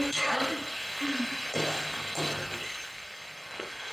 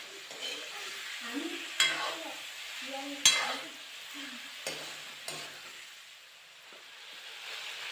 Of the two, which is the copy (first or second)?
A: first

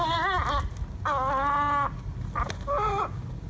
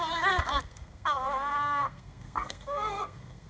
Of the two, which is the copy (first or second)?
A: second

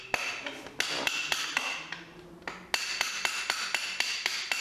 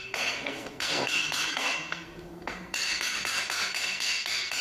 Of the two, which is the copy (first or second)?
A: second